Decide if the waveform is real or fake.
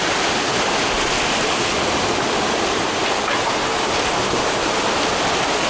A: real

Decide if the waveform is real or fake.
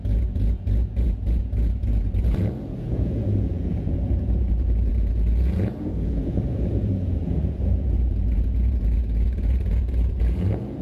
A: fake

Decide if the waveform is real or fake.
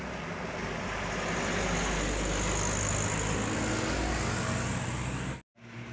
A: real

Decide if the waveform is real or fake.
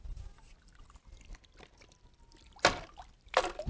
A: real